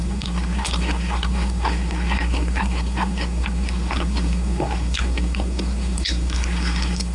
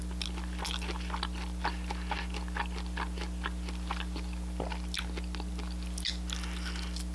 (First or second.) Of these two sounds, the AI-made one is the first